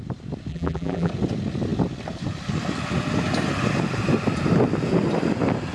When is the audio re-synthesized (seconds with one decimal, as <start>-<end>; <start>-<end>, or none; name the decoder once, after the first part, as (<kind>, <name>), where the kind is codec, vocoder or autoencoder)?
0.5-1.1 (vocoder, BigVGAN v2)